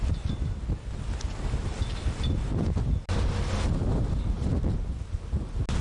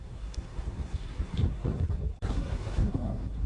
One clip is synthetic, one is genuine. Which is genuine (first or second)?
first